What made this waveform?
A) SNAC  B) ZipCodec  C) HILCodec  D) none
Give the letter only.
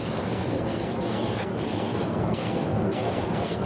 A